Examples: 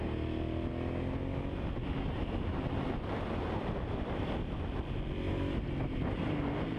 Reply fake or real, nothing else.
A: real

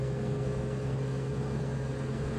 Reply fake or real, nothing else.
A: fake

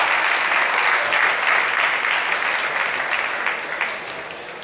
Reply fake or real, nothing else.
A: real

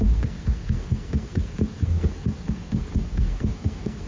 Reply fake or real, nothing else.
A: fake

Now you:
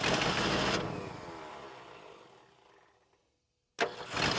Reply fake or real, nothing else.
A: real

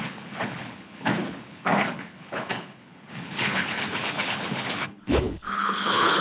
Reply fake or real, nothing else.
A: fake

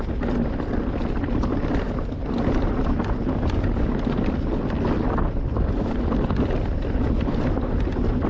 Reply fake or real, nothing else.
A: real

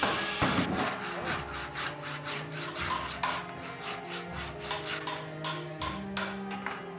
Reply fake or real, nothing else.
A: real